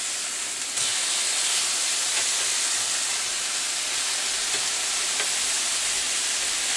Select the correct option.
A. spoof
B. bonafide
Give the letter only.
B